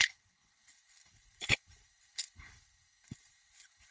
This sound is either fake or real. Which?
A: fake